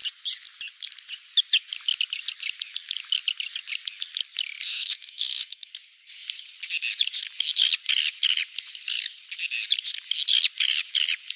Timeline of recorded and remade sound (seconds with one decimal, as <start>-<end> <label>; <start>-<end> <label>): 0.0-4.7 recorded; 4.7-5.7 remade; 5.7-11.4 recorded